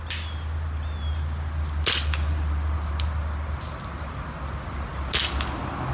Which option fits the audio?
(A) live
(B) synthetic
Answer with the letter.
A